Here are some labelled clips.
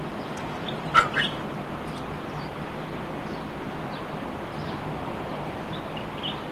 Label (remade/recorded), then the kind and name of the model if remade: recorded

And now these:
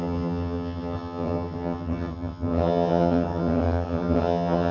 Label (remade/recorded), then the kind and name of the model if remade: remade, vocoder, HiFi-GAN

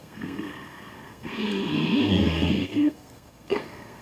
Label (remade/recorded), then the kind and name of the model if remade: remade, codec, SNAC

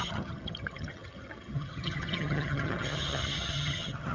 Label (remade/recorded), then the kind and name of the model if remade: remade, vocoder, HiFi-GAN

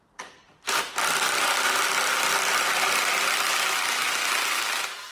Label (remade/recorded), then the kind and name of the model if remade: recorded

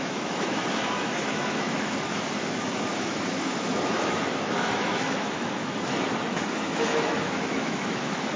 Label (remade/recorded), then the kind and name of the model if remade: remade, autoencoder, DAC-VAE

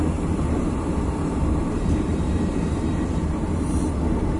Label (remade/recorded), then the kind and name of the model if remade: remade, vocoder, BigVGAN v2